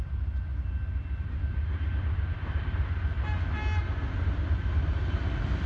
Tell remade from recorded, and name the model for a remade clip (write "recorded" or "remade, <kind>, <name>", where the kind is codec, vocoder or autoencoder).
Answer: recorded